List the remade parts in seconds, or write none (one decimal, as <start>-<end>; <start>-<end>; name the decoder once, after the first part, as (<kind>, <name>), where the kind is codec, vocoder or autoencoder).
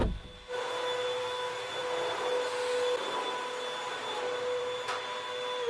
none